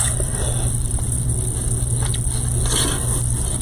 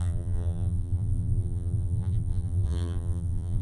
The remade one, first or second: second